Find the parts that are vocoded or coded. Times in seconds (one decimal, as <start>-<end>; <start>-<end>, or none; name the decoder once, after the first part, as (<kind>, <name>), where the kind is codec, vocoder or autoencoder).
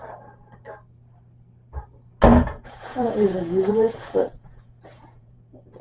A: 2.3-5.8 (vocoder, Vocos)